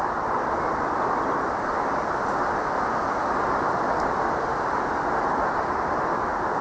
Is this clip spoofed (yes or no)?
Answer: no